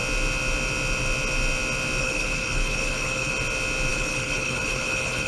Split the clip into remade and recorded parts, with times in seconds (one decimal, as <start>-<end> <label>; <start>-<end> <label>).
0.0-2.0 recorded; 2.0-3.3 remade; 3.3-3.9 recorded; 3.9-5.3 remade